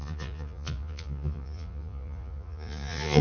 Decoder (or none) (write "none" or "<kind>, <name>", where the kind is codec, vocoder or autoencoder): vocoder, Vocos